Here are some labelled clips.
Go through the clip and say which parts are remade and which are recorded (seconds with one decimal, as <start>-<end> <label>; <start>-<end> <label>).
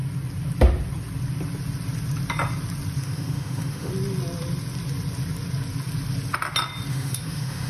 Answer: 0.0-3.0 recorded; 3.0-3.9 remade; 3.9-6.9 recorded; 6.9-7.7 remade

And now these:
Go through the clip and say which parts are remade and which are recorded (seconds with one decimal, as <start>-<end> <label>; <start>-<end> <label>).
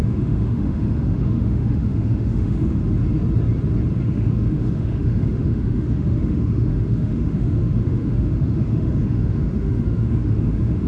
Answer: 0.0-2.8 remade; 2.8-4.0 recorded; 4.0-10.9 remade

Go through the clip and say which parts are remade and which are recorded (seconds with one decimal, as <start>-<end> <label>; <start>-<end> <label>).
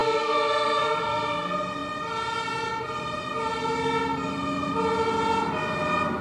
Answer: 0.0-1.0 remade; 1.0-6.2 recorded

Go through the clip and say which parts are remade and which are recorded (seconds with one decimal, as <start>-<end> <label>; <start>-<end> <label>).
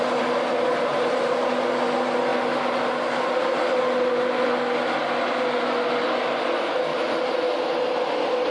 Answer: 0.0-0.9 recorded; 0.9-1.5 remade; 1.5-6.9 recorded; 6.9-7.5 remade; 7.5-8.5 recorded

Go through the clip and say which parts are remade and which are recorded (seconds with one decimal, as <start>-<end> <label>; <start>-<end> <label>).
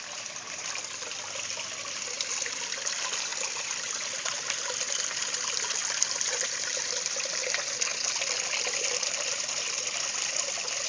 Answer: 0.0-10.9 recorded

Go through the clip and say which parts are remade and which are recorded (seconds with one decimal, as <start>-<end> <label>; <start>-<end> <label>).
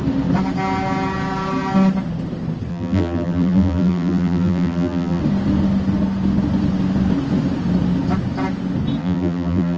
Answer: 0.0-2.7 recorded; 2.7-5.2 remade; 5.2-9.0 recorded; 9.0-9.8 remade